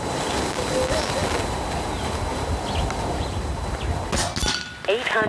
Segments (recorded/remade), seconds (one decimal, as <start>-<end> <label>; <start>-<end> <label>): 0.0-5.3 recorded

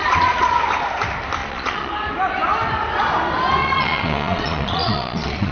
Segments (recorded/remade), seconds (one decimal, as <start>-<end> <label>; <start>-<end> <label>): 0.0-0.5 remade; 0.5-1.4 recorded; 1.4-1.9 remade; 1.9-3.6 recorded; 3.6-5.5 remade

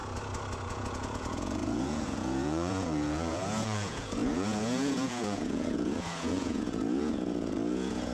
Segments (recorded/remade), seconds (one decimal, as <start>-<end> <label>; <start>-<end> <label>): 0.0-0.7 recorded; 0.7-8.1 remade

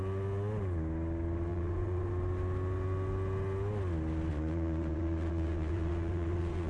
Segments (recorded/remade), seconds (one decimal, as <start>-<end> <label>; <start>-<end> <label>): 0.0-1.5 recorded; 1.5-2.1 remade; 2.1-4.3 recorded; 4.3-6.7 remade

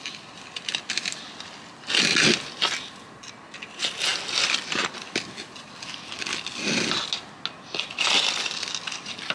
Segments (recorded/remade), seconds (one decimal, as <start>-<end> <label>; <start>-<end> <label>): 0.0-9.3 recorded